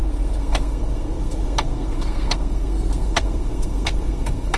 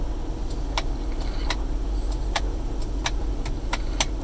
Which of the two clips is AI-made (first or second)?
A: first